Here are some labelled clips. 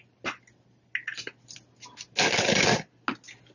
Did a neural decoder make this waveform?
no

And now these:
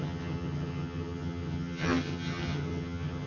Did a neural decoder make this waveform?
yes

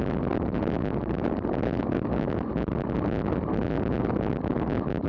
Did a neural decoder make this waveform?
no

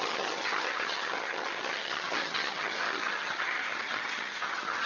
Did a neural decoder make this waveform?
yes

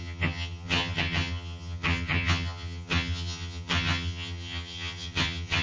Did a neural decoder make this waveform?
yes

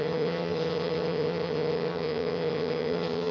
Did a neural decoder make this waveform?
yes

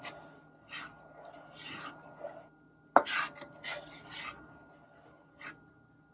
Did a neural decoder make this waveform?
no